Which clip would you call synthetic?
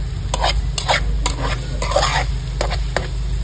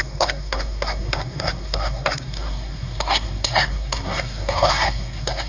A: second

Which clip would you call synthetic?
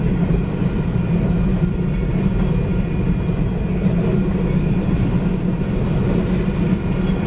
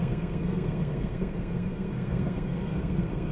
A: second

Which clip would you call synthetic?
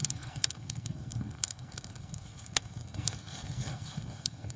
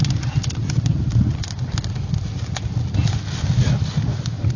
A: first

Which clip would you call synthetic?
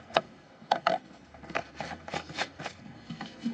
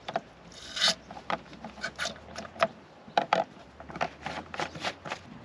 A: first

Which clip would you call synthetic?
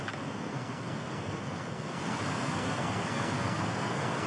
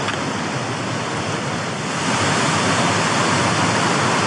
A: first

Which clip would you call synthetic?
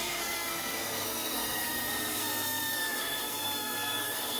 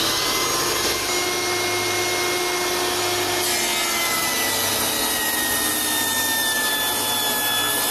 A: first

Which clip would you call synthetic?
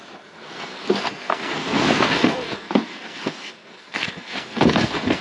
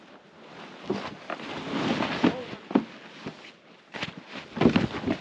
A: first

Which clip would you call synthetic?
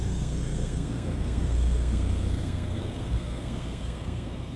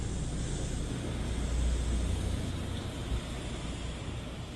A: first